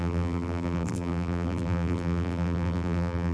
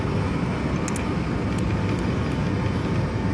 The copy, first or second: first